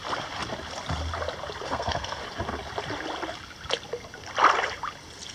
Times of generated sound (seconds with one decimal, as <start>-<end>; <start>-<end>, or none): 1.7-2.2